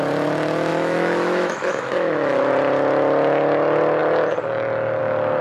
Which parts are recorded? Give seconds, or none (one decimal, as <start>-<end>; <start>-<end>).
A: 0.0-0.7; 2.5-5.4